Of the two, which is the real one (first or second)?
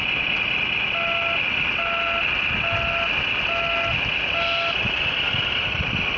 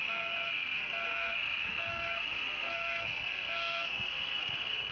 first